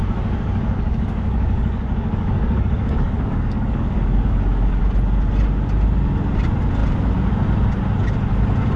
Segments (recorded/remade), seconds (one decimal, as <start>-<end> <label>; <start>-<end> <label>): 0.0-4.8 remade; 4.8-8.8 recorded